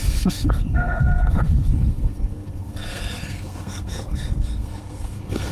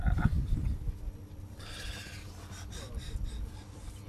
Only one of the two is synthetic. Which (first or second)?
first